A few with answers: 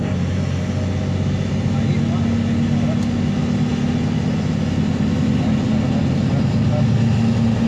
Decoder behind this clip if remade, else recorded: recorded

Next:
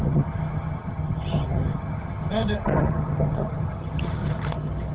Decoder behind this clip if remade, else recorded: remade, vocoder, HiFi-GAN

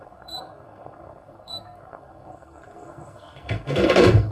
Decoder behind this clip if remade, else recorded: remade, codec, SNAC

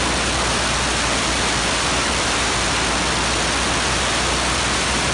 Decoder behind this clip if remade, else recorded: recorded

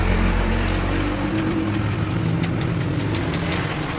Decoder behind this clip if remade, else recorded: recorded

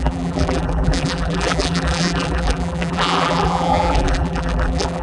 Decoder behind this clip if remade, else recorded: remade, vocoder, BigVGAN v2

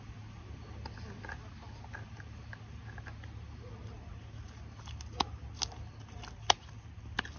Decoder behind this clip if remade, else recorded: recorded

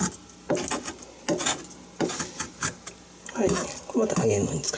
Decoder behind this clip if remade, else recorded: recorded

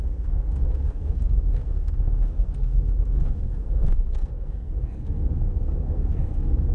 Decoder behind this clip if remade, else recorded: remade, codec, SNAC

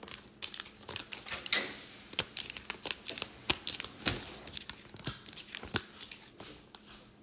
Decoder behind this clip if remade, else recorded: recorded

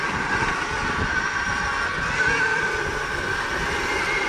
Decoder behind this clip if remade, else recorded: recorded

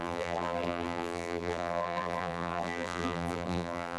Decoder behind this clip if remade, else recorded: remade, vocoder, BigVGAN v2